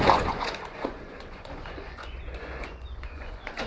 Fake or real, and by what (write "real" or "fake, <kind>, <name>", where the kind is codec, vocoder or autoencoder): fake, vocoder, Vocos